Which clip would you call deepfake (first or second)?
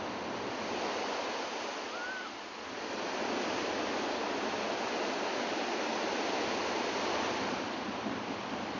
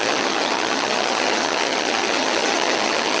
second